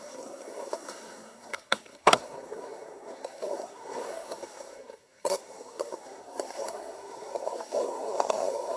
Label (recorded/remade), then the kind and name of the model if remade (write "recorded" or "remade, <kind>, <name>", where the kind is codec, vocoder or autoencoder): remade, codec, SNAC